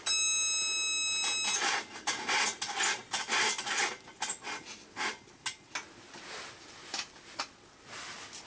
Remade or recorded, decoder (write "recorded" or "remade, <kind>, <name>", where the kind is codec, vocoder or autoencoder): recorded